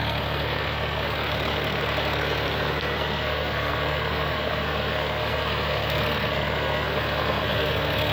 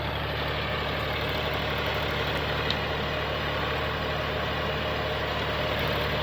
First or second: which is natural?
second